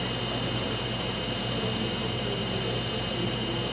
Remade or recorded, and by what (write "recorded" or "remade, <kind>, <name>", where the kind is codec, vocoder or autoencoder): recorded